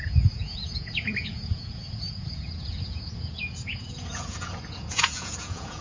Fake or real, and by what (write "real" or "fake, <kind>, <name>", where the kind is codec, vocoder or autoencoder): fake, vocoder, Vocos